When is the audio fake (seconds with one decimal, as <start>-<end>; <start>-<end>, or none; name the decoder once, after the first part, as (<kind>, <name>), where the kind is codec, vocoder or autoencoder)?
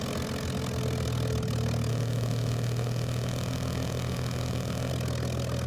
1.9-4.9 (autoencoder, DAC-VAE)